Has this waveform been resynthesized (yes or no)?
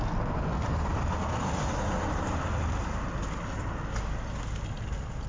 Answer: no